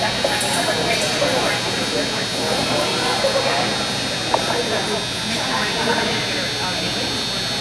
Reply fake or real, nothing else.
real